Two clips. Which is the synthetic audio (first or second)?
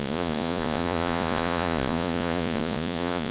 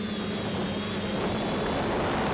first